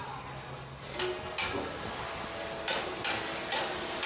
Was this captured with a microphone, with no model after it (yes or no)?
yes